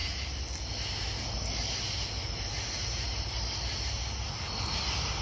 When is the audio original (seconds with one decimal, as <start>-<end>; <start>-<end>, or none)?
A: 0.0-5.2